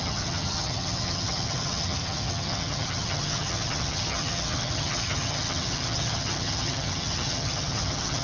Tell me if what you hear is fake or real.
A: fake